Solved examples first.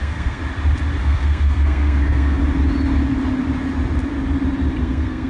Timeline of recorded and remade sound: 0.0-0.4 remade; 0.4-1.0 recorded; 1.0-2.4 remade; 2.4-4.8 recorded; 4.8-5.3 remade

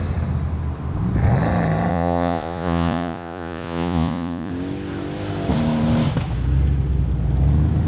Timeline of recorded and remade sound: 0.0-1.9 recorded; 1.9-4.5 remade; 4.5-7.9 recorded

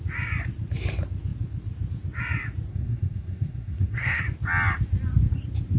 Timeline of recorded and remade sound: 0.0-2.7 recorded; 2.7-4.2 remade; 4.2-5.8 recorded

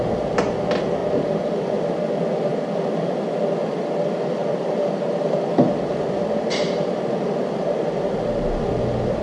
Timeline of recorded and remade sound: 0.0-1.0 recorded; 1.0-2.1 remade; 2.1-2.5 recorded; 2.5-3.1 remade; 3.1-3.6 recorded; 3.6-8.6 remade; 8.6-9.2 recorded

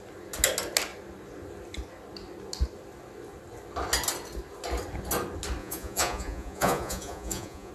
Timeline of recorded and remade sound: 0.0-5.6 recorded; 5.6-7.7 remade

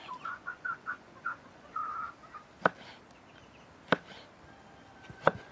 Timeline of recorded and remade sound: 0.0-1.8 remade; 1.8-5.1 recorded; 5.1-5.5 remade

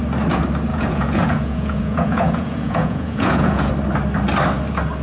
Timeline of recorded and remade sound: 0.0-0.7 recorded; 0.7-3.7 remade; 3.7-5.0 recorded